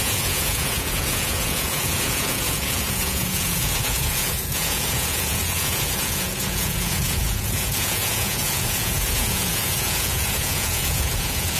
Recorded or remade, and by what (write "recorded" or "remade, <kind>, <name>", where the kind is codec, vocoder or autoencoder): remade, vocoder, Vocos